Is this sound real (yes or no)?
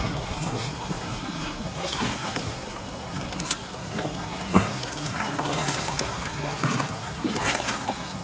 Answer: no